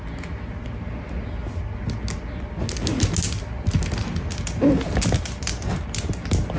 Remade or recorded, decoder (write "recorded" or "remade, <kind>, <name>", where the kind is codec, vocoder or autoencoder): recorded